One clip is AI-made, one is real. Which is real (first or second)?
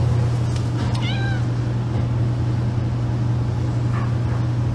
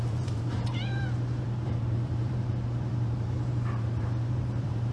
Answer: first